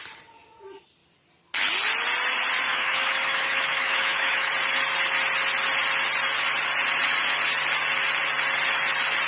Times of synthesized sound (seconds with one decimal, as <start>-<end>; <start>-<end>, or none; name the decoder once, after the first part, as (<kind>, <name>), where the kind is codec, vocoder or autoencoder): 2.7-4.5 (autoencoder, DAC-VAE)